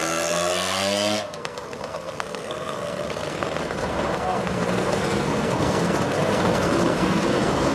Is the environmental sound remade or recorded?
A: remade